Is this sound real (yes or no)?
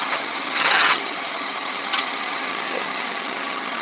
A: no